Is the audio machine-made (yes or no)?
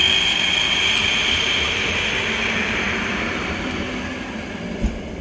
yes